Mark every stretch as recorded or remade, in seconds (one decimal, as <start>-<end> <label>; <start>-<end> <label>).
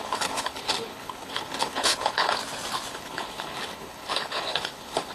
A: 0.0-2.4 remade; 2.4-2.9 recorded; 2.9-5.1 remade